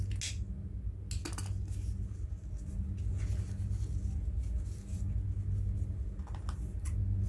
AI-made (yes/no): no